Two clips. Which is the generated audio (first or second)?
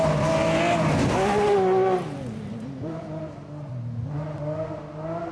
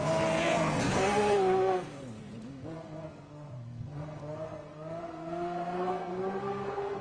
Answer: second